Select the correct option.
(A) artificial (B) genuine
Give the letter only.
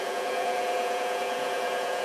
A